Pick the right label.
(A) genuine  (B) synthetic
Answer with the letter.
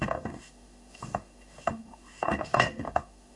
B